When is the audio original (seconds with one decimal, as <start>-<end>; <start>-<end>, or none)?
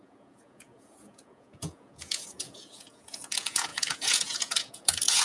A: none